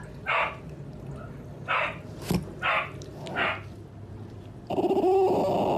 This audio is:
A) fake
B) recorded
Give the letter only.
B